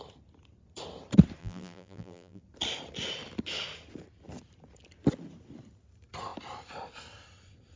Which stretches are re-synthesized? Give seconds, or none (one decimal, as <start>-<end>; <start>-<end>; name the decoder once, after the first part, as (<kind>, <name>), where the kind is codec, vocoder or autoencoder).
1.4-2.4 (vocoder, BigVGAN v2)